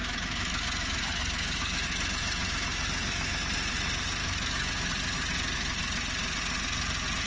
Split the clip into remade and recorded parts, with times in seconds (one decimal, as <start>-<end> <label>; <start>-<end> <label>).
0.0-3.4 remade; 3.4-4.2 recorded; 4.2-4.9 remade; 4.9-7.3 recorded